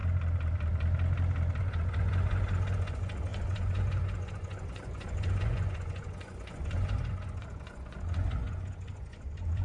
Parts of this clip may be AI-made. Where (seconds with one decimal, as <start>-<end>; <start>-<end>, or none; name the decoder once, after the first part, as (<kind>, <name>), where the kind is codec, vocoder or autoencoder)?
1.6-9.6 (vocoder, Vocos)